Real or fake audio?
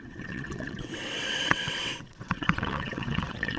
fake